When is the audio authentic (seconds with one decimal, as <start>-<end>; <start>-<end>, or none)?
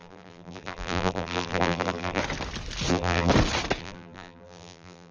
2.2-2.9; 3.3-3.8